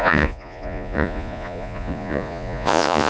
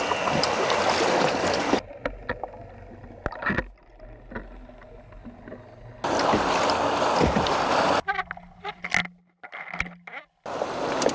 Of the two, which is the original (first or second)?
second